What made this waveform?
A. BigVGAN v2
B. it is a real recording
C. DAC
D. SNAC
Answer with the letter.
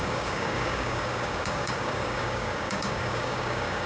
C